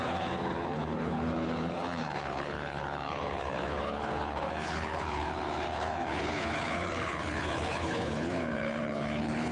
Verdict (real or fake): fake